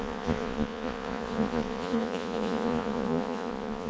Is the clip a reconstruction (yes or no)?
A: yes